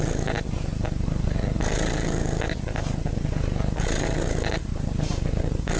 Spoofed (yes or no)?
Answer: no